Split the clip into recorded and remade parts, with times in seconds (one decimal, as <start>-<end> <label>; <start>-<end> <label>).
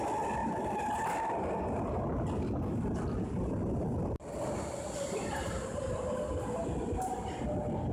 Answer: 0.0-0.4 recorded; 0.4-2.4 remade; 2.4-7.9 recorded